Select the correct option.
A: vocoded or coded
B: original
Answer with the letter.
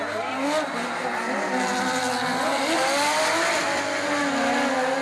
B